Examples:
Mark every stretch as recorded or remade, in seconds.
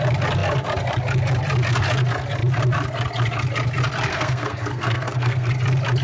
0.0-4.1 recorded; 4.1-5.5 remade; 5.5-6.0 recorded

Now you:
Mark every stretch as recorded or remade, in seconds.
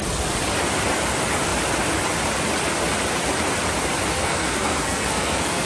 0.0-4.1 recorded; 4.1-5.7 remade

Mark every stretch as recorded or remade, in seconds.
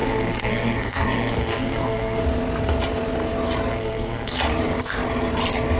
0.0-2.2 remade; 2.2-3.7 recorded; 3.7-4.4 remade; 4.4-5.8 recorded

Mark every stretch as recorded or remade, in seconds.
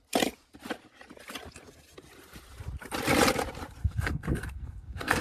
0.0-3.8 recorded; 3.8-5.2 remade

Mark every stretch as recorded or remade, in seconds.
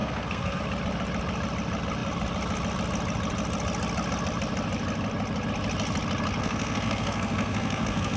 0.0-0.6 remade; 0.6-6.4 recorded; 6.4-8.2 remade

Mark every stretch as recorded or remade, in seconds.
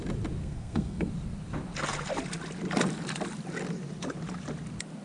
0.0-0.4 recorded; 0.4-1.1 remade; 1.1-5.0 recorded